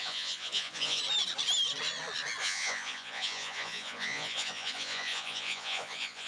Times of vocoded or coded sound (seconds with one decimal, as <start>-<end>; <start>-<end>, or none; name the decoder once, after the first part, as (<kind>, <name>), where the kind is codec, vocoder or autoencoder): 0.0-1.0 (vocoder, Vocos); 2.4-6.3